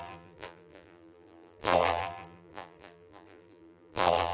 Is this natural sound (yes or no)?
no